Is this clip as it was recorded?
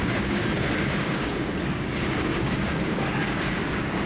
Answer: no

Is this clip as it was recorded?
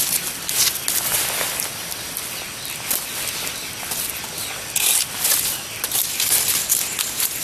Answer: yes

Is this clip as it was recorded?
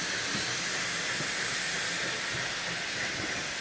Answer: yes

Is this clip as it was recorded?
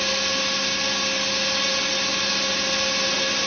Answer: yes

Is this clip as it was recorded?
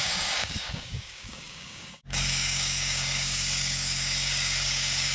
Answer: no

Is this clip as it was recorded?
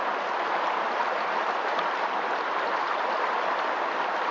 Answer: yes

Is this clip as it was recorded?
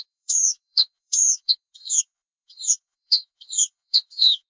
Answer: no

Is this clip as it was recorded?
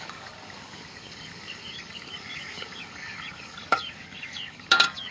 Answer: no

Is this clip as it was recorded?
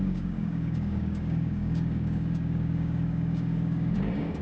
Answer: no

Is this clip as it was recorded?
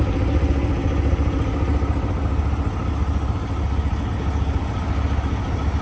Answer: yes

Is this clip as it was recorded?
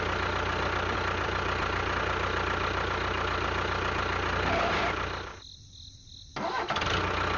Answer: yes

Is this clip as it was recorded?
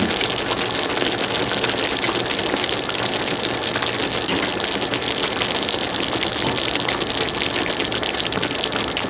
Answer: yes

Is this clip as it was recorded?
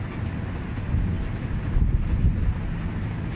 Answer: yes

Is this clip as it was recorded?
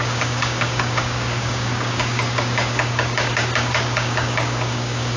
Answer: no